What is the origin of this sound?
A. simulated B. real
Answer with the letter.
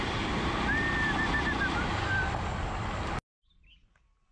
B